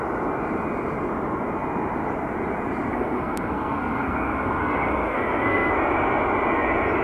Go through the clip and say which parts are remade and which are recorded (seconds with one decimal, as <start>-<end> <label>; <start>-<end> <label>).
0.0-2.9 recorded; 2.9-5.7 remade; 5.7-7.0 recorded